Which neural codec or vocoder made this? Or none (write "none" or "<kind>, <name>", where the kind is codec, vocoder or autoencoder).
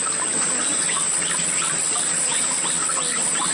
none